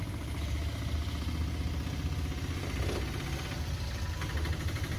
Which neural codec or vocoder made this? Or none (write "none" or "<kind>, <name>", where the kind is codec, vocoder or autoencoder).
none